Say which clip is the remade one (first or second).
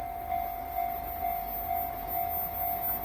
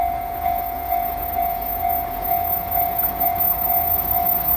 second